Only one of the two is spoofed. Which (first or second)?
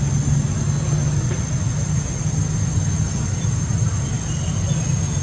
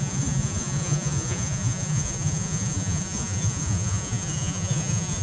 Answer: second